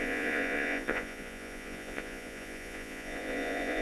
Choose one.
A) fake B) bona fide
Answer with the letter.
A